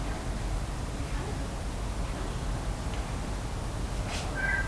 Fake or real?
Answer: real